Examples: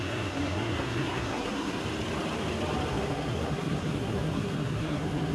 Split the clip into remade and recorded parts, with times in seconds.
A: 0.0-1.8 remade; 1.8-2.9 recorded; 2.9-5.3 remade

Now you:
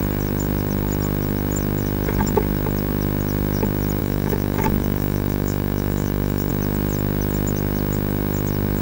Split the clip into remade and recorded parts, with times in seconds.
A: 0.0-4.0 recorded; 4.0-6.5 remade; 6.5-8.8 recorded

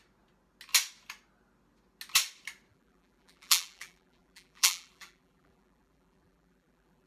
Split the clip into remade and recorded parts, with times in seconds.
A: 0.0-2.7 recorded; 2.7-7.1 remade

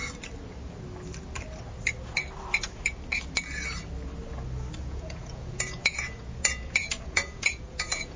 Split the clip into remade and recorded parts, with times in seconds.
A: 0.0-4.8 recorded; 4.8-8.2 remade

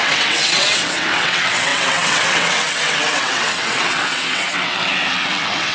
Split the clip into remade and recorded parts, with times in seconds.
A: 0.0-5.7 remade

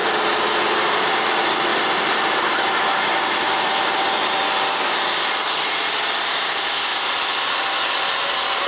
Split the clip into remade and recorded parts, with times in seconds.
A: 0.0-6.9 remade; 6.9-7.7 recorded; 7.7-8.7 remade